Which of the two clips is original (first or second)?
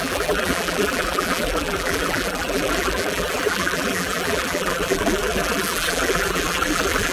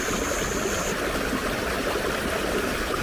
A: second